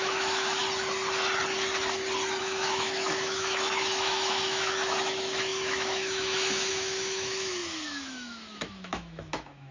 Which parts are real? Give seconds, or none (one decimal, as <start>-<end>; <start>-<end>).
0.6-2.4